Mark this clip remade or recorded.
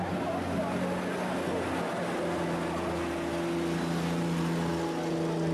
recorded